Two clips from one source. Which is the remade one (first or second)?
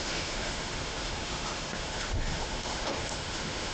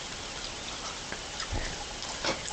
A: first